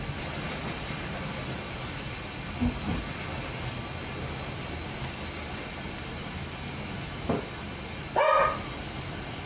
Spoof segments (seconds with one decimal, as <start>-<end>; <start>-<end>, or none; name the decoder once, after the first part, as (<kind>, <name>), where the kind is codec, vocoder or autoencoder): none